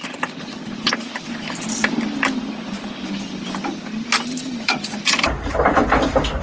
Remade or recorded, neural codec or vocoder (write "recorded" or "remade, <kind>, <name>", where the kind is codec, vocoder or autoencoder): remade, vocoder, BigVGAN v2